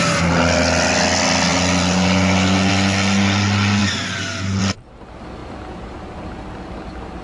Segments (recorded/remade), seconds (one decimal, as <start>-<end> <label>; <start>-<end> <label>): 0.0-7.2 recorded